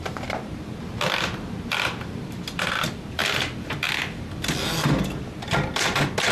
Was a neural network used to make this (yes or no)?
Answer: no